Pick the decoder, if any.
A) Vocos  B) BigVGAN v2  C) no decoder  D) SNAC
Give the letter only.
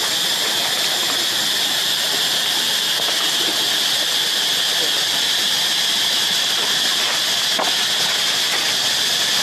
C